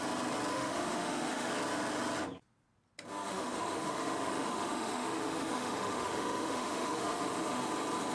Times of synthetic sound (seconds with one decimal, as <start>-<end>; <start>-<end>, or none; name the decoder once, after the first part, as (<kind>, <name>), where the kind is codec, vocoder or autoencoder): 0.5-1.5 (autoencoder, DAC-VAE); 3.3-7.6

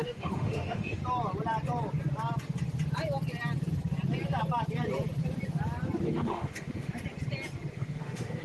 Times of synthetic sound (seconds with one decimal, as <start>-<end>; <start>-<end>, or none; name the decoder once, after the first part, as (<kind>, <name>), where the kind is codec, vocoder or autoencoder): 0.0-1.0 (autoencoder, DAC-VAE); 6.0-6.9; 7.7-8.4

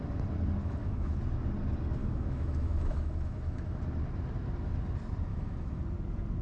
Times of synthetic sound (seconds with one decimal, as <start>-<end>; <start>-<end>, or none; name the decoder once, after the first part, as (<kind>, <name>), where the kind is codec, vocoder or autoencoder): 0.6-1.2 (autoencoder, DAC-VAE); 2.0-3.8; 5.3-5.8

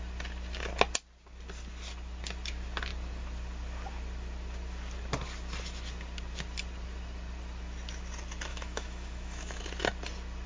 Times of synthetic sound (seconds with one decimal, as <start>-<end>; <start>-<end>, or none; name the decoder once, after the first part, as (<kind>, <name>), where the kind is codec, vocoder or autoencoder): 8.5-9.6 (autoencoder, DAC-VAE)

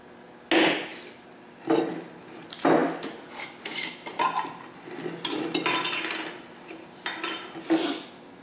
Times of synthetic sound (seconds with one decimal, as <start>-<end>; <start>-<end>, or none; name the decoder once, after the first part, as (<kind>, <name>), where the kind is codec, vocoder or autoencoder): none

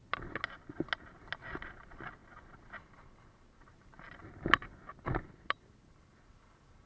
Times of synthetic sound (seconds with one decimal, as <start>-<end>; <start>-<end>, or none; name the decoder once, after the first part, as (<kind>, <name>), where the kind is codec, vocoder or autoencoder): none

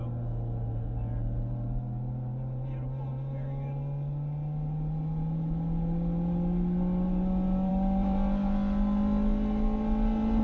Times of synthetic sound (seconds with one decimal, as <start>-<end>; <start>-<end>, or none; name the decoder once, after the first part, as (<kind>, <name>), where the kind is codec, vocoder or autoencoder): none